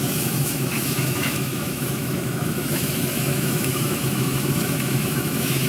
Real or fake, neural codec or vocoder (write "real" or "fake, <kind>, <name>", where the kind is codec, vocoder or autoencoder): fake, autoencoder, DAC-VAE